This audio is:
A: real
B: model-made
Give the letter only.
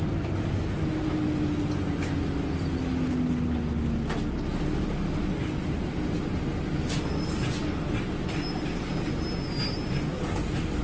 A